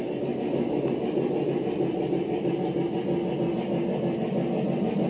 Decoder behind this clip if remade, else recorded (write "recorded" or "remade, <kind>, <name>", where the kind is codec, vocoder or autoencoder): remade, vocoder, BigVGAN v2